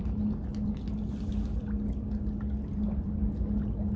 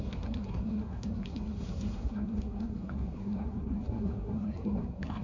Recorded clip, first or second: first